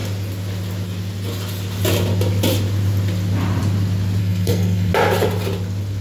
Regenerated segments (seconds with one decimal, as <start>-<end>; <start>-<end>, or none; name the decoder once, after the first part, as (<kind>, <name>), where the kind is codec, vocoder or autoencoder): 4.2-4.9 (codec, SNAC)